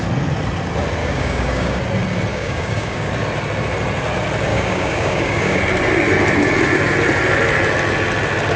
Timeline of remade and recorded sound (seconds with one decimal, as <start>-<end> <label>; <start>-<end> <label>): 0.0-1.0 recorded; 1.0-1.8 remade; 1.8-2.3 recorded; 2.3-3.1 remade; 3.1-4.5 recorded; 4.5-5.6 remade; 5.6-8.6 recorded